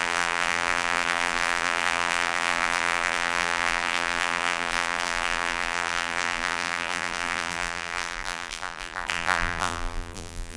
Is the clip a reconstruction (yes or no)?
yes